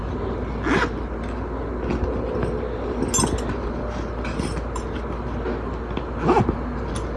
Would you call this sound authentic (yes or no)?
yes